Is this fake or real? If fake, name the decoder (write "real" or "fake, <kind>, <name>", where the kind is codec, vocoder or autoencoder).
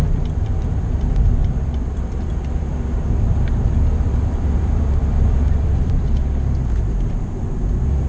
fake, vocoder, BigVGAN v2